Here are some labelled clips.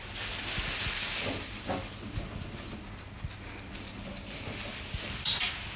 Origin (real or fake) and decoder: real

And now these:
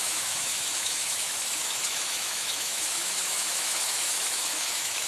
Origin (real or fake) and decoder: fake, autoencoder, DAC-VAE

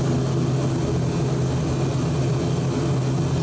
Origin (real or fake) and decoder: real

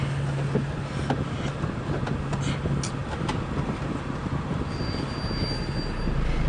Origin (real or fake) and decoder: real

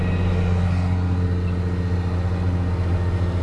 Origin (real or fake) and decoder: real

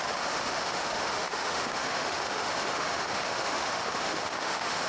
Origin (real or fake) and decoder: fake, autoencoder, DAC-VAE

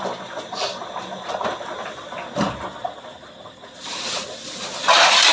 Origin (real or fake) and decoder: real